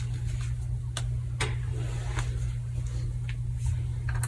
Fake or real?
real